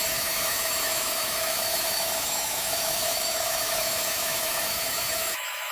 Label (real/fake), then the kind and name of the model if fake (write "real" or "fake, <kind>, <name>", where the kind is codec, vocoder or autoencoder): fake, autoencoder, DAC-VAE